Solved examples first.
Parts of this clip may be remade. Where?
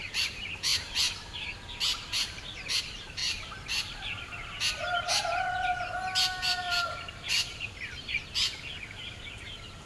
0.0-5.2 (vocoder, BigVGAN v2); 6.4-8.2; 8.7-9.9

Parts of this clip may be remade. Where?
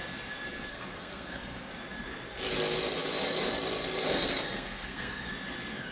0.7-1.7 (codec, SNAC); 4.1-5.3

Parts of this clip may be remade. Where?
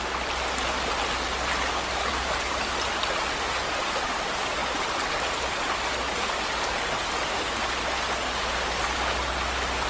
2.1-3.7 (vocoder, BigVGAN v2)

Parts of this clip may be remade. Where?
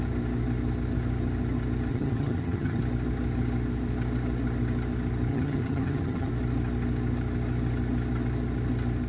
1.9-2.8 (vocoder, HiFi-GAN); 5.3-6.3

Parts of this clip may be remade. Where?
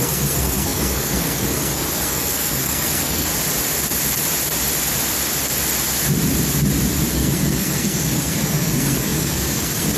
0.0-3.3 (codec, SNAC); 7.1-10.0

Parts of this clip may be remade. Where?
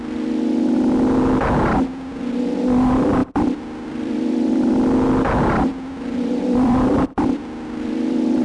3.2-4.7 (vocoder, BigVGAN v2); 5.7-8.4